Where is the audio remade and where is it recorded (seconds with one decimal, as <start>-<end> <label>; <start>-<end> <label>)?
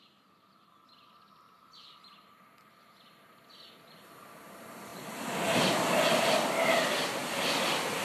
0.0-8.0 recorded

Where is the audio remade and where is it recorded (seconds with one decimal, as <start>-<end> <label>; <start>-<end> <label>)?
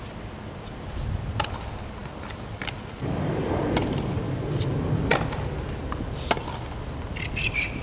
0.0-2.0 recorded; 2.0-3.3 remade; 3.3-7.8 recorded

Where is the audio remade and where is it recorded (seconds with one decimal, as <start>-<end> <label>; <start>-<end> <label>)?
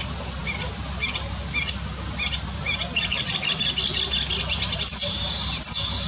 0.0-6.1 recorded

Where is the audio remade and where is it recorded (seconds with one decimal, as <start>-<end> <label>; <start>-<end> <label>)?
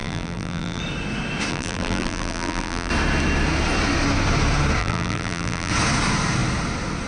0.0-0.8 remade; 0.8-1.5 recorded; 1.5-2.9 remade; 2.9-4.8 recorded; 4.8-5.7 remade; 5.7-7.1 recorded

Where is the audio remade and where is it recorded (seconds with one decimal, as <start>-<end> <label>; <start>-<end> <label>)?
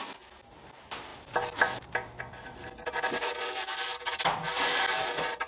0.0-1.1 recorded; 1.1-2.2 remade; 2.2-4.1 recorded; 4.1-4.7 remade; 4.7-5.5 recorded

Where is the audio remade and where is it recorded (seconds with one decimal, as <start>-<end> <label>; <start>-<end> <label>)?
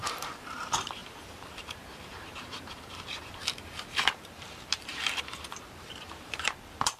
0.0-7.0 remade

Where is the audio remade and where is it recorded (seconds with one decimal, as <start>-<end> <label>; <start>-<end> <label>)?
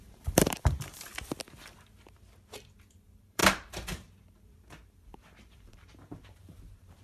0.0-1.1 remade; 1.1-2.7 recorded; 2.7-7.0 remade